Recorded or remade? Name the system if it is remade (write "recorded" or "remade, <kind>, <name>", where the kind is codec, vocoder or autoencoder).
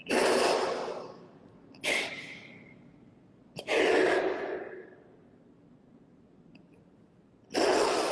recorded